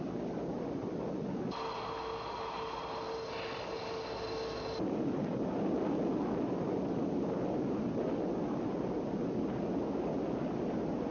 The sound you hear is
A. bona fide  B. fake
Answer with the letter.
A